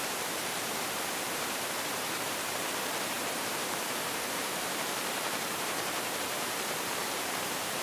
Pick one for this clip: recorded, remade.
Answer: remade